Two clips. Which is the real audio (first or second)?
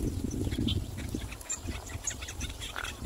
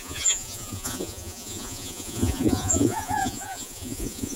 first